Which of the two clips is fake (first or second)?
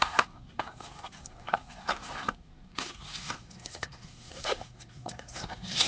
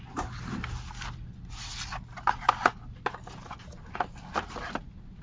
first